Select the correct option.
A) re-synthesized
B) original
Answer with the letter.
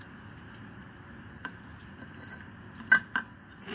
B